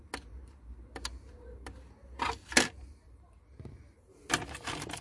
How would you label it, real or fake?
real